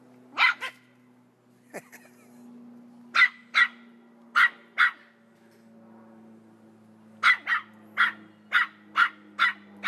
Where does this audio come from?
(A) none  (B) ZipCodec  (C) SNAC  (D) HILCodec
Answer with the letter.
A